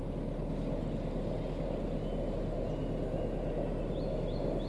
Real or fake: real